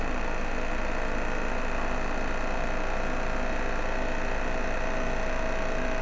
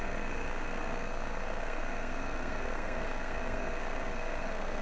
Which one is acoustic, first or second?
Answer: first